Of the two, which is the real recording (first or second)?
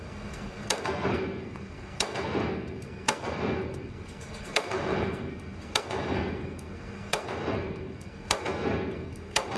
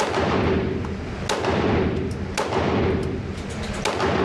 second